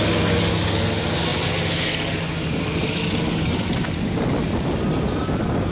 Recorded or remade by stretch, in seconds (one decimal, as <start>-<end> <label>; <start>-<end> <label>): 0.0-5.7 recorded